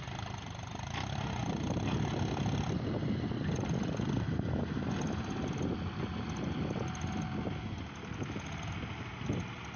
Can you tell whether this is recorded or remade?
recorded